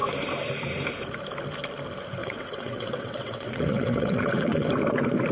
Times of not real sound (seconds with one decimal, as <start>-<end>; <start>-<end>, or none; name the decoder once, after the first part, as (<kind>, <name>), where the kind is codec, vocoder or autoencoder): 2.2-4.7 (vocoder, WaveNeXt)